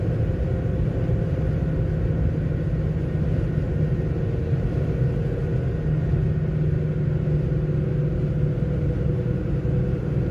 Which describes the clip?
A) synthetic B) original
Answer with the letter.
B